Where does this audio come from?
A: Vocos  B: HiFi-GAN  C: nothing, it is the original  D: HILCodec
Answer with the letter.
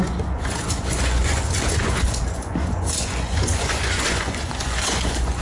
A